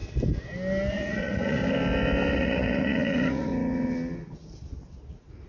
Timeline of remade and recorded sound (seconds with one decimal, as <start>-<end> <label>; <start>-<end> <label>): 0.0-0.9 recorded; 0.9-1.6 remade; 1.6-2.4 recorded; 2.4-3.5 remade; 3.5-5.1 recorded; 5.1-5.5 remade